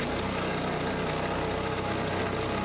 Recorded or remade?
recorded